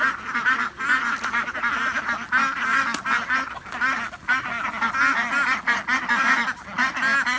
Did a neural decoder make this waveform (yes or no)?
no